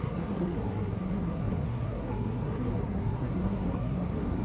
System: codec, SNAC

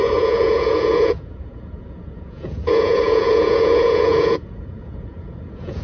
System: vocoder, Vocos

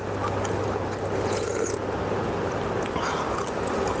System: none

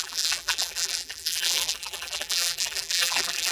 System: vocoder, BigVGAN v2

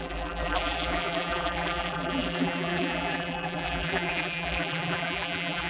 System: vocoder, BigVGAN v2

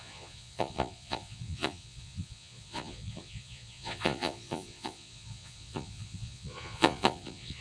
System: vocoder, Vocos